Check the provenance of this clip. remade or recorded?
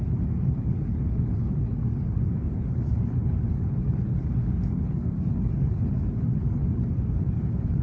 remade